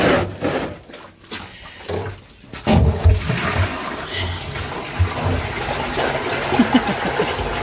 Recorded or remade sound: recorded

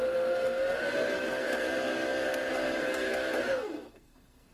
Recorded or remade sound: remade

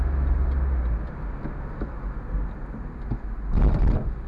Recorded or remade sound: recorded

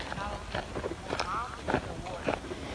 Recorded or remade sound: recorded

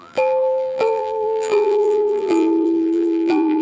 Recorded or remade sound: remade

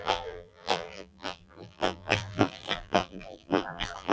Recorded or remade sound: remade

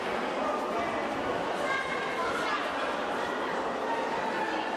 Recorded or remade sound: recorded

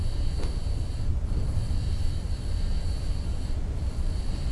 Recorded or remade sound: recorded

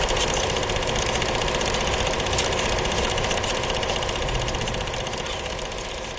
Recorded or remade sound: recorded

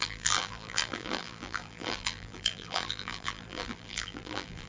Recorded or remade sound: remade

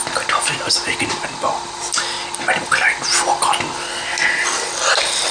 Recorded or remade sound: recorded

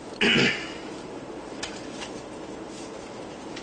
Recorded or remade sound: recorded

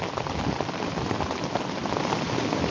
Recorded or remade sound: recorded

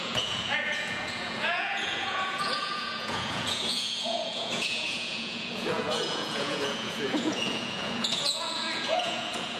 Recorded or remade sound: remade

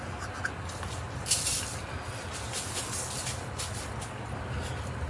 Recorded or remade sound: recorded